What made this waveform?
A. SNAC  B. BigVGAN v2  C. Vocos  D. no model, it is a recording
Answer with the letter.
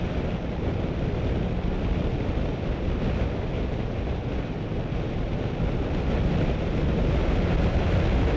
D